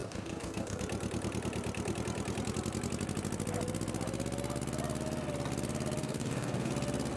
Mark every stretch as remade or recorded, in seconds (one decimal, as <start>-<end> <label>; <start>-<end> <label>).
0.0-0.8 remade; 0.8-6.0 recorded; 6.0-6.7 remade; 6.7-7.2 recorded